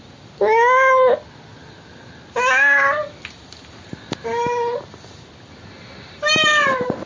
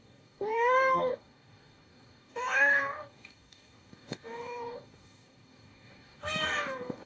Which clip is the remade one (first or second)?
second